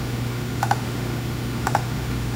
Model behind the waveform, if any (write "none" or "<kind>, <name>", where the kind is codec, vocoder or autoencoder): autoencoder, DAC-VAE